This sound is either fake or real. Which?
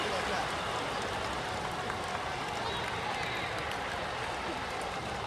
real